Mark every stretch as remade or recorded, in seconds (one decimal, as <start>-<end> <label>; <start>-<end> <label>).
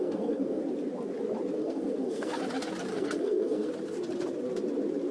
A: 0.0-0.6 remade; 0.6-1.6 recorded; 1.6-2.4 remade; 2.4-2.9 recorded; 2.9-3.7 remade; 3.7-5.1 recorded